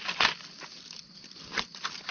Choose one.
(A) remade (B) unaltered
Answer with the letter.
B